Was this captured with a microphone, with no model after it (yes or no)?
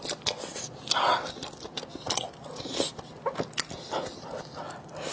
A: yes